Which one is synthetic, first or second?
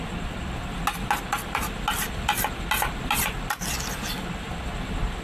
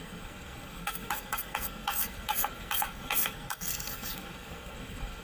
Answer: second